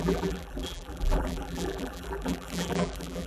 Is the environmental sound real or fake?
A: fake